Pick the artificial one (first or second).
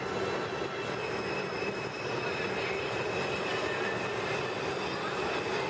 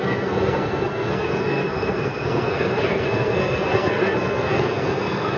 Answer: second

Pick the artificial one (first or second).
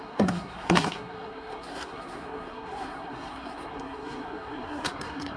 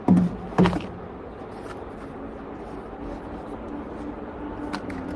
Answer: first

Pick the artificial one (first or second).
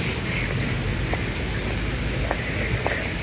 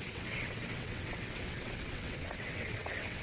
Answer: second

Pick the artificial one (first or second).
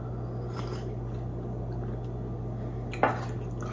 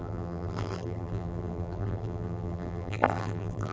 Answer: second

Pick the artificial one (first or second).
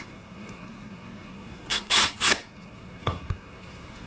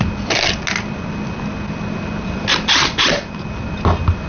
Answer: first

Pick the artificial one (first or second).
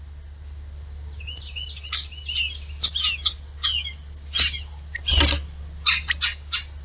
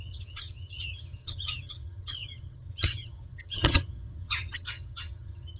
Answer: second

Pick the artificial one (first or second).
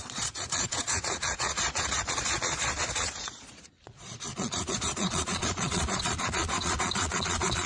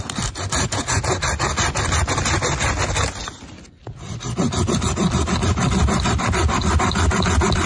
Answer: first